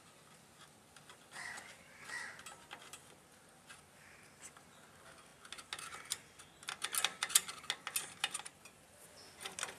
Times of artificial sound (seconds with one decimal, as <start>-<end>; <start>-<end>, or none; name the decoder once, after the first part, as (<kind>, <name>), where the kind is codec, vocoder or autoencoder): none